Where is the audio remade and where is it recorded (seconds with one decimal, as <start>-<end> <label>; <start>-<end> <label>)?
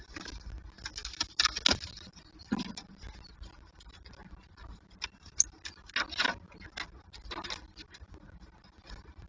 0.0-9.3 recorded